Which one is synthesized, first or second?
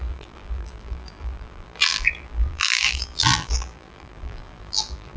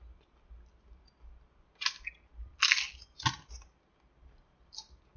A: first